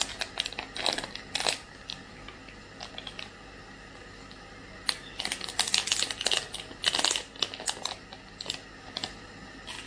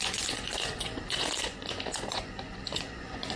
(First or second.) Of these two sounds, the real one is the first